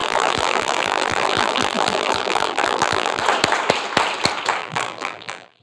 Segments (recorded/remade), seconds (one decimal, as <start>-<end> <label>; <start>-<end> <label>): 0.0-3.2 remade; 3.2-4.6 recorded; 4.6-5.6 remade